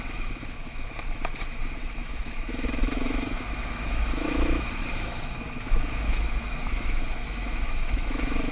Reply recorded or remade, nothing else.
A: remade